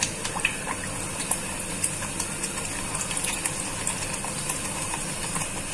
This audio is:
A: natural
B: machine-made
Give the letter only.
A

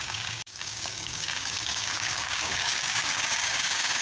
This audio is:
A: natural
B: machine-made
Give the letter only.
B